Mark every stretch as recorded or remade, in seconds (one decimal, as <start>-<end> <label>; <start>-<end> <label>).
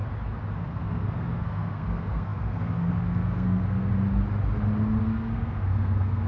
0.0-0.6 recorded; 0.6-3.9 remade; 3.9-5.0 recorded; 5.0-6.3 remade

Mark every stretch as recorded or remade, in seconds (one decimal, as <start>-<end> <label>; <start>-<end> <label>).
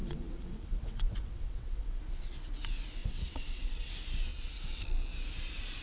0.0-2.0 remade; 2.0-3.0 recorded; 3.0-3.9 remade; 3.9-4.3 recorded; 4.3-4.8 remade; 4.8-5.8 recorded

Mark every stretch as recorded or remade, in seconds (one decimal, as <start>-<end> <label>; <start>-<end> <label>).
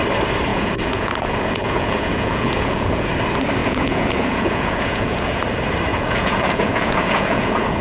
0.0-0.5 recorded; 0.5-3.1 remade; 3.1-3.6 recorded; 3.6-5.4 remade; 5.4-5.9 recorded; 5.9-7.8 remade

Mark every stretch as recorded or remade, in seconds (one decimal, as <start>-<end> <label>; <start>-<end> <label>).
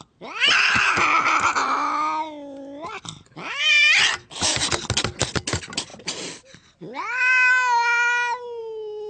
0.0-9.1 recorded